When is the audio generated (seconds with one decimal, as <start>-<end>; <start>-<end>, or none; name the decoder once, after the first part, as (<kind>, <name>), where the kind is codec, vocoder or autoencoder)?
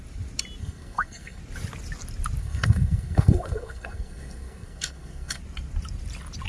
0.6-1.4 (codec, SNAC); 2.4-5.4